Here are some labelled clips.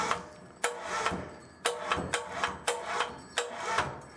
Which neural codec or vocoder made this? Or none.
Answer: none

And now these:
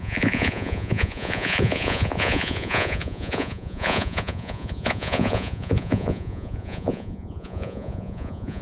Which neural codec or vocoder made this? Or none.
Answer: vocoder, Vocos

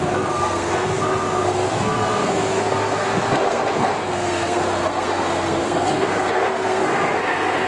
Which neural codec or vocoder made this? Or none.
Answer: codec, SNAC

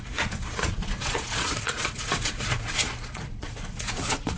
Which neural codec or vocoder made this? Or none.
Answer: vocoder, Vocos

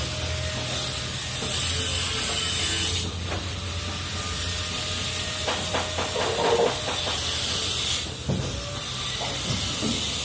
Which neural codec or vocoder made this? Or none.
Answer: none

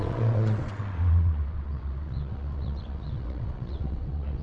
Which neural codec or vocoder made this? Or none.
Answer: vocoder, WaveNeXt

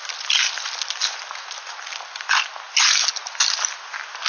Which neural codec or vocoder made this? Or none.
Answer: none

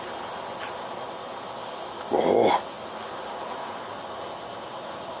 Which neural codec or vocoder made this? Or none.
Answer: none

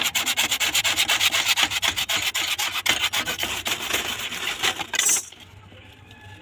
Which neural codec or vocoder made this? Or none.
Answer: none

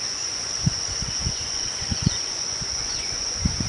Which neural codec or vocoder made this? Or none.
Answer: vocoder, Vocos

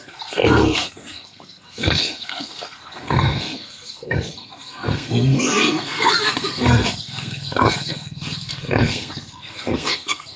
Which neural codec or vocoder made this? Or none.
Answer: codec, SNAC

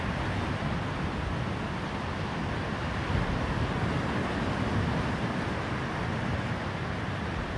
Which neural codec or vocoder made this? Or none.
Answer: none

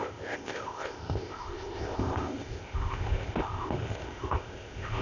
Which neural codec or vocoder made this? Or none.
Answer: codec, ZipCodec